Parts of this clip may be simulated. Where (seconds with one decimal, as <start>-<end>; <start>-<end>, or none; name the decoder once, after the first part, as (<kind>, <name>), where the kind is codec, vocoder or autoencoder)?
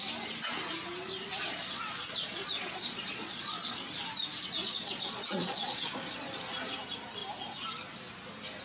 1.4-3.9 (vocoder, Vocos); 4.6-6.4